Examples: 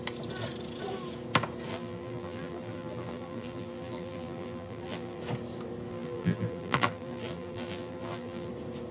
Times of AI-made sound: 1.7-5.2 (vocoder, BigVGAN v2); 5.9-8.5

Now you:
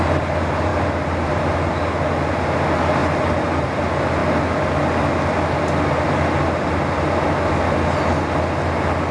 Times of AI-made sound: 0.7-1.7 (vocoder, BigVGAN v2); 3.0-3.7

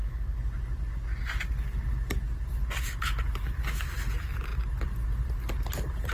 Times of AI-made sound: 2.5-6.1 (vocoder, BigVGAN v2)

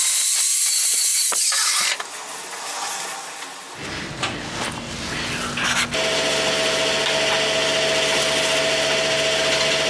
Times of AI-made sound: none

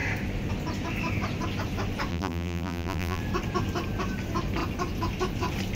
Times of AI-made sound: 2.1-3.2 (vocoder, BigVGAN v2)

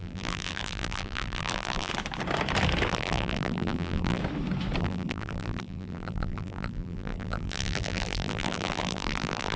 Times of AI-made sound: 0.0-1.9 (vocoder, BigVGAN v2); 2.9-4.2; 4.8-9.6

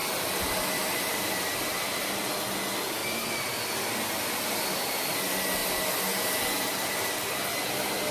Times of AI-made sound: 0.0-2.1 (vocoder, BigVGAN v2); 3.0-4.6

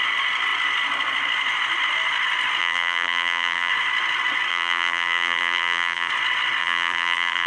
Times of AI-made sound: 2.6-3.7 (vocoder, BigVGAN v2); 4.5-6.1; 6.6-7.5